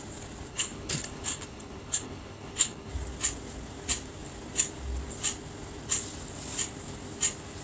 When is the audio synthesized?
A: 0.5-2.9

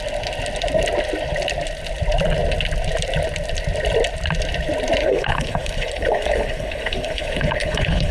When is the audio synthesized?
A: 5.0-8.1